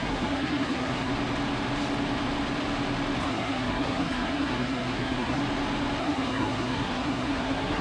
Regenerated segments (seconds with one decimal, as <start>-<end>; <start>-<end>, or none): 0.0-1.1; 3.2-5.4; 6.0-7.8